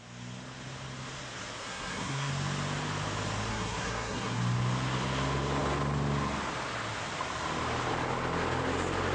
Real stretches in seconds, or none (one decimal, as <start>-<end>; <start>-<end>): 0.0-1.6; 2.3-3.5; 4.4-9.1